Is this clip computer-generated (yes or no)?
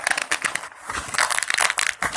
no